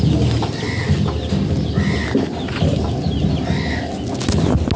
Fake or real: real